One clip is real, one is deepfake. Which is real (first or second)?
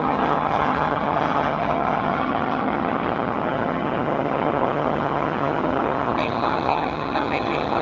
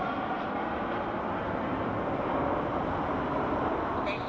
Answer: second